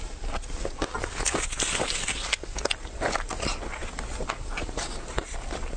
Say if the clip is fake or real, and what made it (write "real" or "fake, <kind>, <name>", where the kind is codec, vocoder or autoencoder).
real